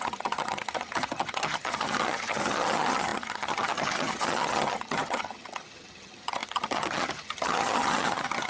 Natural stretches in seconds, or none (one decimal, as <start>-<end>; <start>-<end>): none